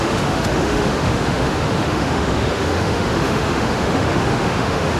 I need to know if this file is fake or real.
fake